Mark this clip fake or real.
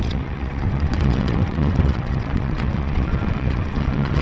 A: fake